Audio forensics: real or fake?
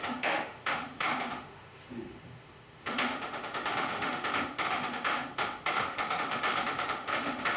fake